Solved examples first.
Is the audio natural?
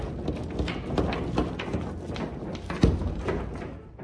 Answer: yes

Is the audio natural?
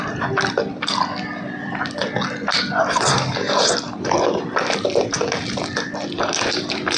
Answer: yes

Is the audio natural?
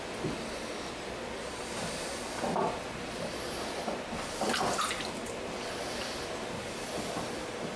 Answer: yes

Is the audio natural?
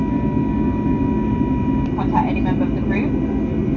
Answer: yes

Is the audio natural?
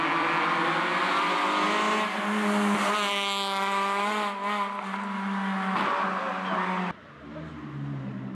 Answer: yes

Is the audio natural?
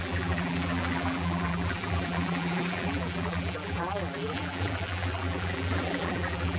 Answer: no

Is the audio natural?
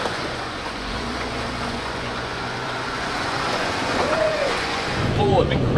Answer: no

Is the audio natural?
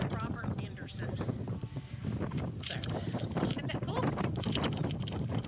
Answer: no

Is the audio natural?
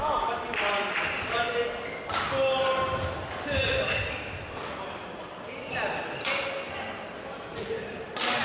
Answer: yes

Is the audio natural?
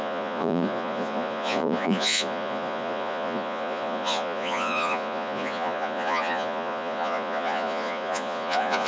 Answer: no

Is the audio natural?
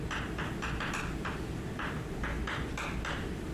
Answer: yes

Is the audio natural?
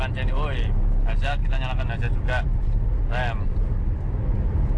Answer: yes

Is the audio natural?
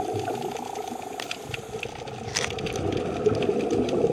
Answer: yes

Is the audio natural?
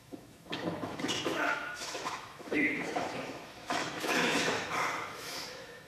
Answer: no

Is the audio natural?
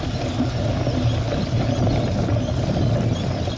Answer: yes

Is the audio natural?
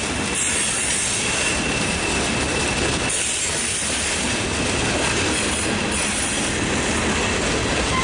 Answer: yes